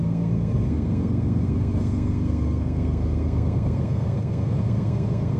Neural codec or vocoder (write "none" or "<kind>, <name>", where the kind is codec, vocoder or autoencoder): codec, SNAC